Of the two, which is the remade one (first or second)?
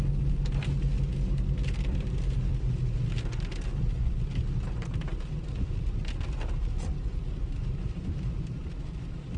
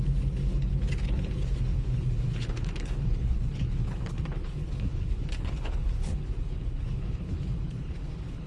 second